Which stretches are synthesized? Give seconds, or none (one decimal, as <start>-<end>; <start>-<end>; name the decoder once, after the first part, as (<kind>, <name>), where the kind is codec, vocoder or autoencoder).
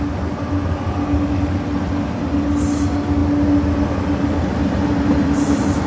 none